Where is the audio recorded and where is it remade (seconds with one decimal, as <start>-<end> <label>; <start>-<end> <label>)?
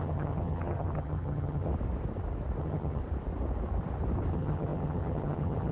0.0-1.7 remade; 1.7-2.6 recorded; 2.6-3.0 remade; 3.0-4.3 recorded; 4.3-5.7 remade